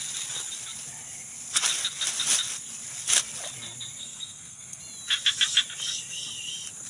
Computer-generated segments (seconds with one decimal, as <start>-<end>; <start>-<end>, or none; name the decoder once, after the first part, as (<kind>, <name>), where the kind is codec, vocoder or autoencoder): 4.0-4.8 (codec, SNAC)